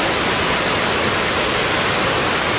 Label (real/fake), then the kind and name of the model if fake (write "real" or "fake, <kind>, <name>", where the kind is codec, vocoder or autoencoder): real